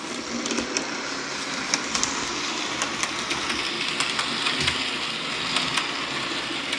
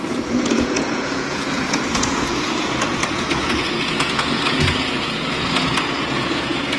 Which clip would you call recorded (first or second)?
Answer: first